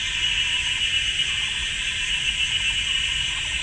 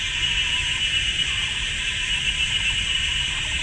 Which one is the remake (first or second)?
second